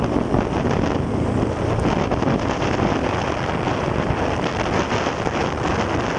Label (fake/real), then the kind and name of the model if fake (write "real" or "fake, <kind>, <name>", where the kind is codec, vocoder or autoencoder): real